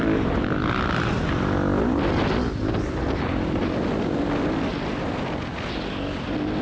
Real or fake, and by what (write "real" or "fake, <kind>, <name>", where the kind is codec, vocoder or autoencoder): real